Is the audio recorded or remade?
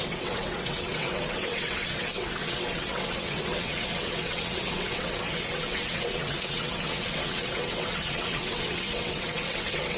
remade